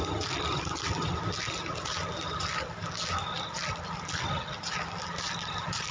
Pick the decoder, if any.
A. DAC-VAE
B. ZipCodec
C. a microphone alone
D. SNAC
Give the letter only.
C